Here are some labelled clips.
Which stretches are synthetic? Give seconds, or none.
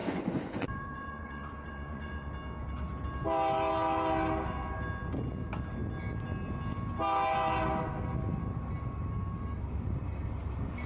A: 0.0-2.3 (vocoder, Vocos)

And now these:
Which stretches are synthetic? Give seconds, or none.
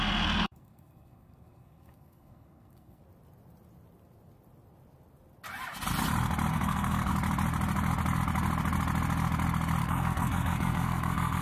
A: 0.0-3.0 (codec, SNAC); 6.5-7.1; 9.8-11.4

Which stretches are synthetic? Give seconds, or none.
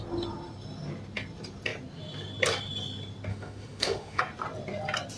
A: 3.3-4.2 (autoencoder, DAC-VAE)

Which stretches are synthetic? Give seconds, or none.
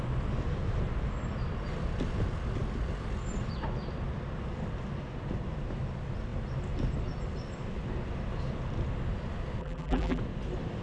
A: 9.6-10.2 (vocoder, BigVGAN v2)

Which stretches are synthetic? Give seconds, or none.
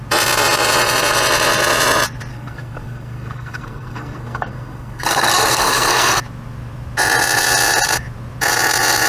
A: 2.3-6.2 (codec, SNAC)